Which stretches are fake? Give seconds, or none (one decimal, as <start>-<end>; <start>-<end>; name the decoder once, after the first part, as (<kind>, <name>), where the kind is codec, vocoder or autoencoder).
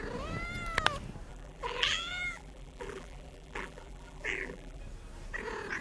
1.3-4.8 (vocoder, BigVGAN v2)